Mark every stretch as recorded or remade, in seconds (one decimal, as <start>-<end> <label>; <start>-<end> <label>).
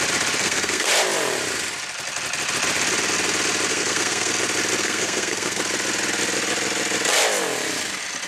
0.0-0.4 recorded; 0.4-0.9 remade; 0.9-3.7 recorded; 3.7-4.3 remade; 4.3-4.8 recorded; 4.8-5.6 remade; 5.6-8.3 recorded